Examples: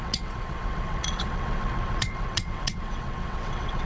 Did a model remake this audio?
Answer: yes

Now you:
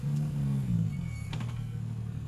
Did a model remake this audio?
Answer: yes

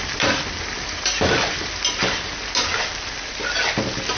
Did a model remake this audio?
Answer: no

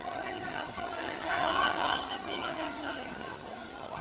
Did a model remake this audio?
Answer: yes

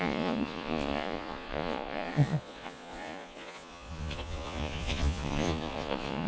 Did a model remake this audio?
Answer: yes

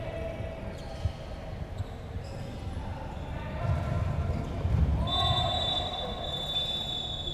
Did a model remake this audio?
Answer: no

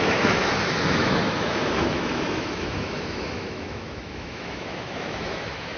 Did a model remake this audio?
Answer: yes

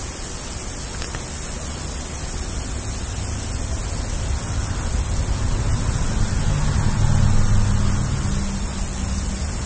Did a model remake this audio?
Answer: no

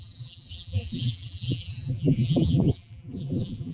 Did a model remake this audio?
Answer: yes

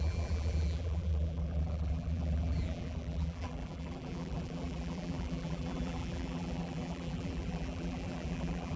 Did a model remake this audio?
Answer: yes